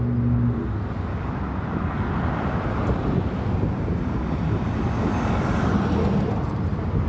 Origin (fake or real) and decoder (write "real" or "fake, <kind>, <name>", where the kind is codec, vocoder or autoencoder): real